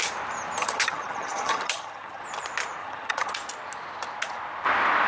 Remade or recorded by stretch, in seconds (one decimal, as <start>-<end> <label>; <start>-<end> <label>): 0.0-0.6 recorded; 0.6-2.2 remade; 2.2-2.8 recorded; 2.8-3.3 remade; 3.3-5.1 recorded